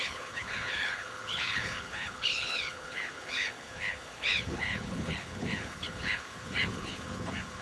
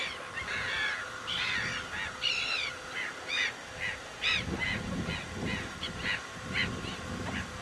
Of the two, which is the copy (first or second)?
first